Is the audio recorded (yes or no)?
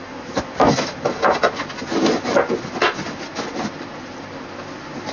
yes